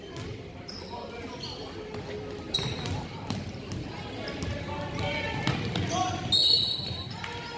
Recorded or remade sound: recorded